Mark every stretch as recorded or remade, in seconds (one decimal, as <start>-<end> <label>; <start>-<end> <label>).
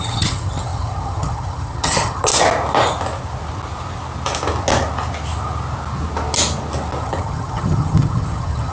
0.0-2.3 remade; 2.3-7.0 recorded; 7.0-8.7 remade